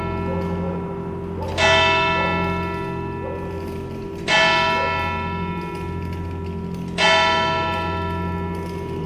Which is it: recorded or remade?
recorded